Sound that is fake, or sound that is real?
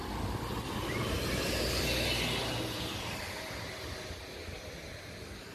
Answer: real